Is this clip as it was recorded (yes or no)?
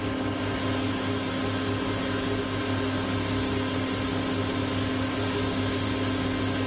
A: yes